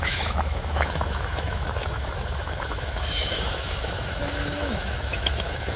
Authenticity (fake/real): fake